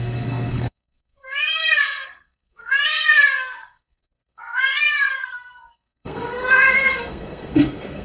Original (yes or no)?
no